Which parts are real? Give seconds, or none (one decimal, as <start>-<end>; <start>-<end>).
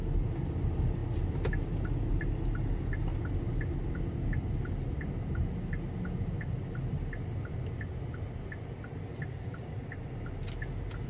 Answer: 0.0-11.1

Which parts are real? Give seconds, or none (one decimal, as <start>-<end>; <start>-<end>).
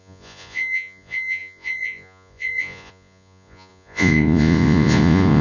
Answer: none